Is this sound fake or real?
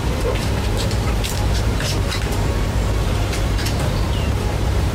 fake